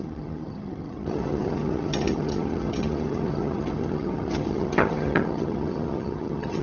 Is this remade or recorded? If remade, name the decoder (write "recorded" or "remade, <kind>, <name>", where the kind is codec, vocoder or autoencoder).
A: remade, vocoder, HiFi-GAN